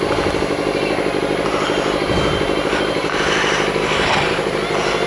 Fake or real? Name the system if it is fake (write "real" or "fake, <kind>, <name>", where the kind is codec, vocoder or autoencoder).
real